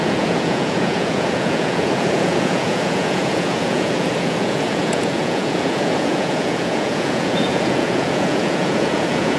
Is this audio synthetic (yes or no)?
yes